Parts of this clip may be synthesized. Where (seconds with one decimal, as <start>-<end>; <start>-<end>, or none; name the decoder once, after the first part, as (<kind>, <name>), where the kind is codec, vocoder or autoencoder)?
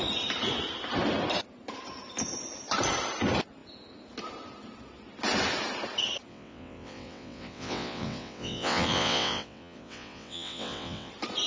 6.3-11.1 (vocoder, WaveNeXt)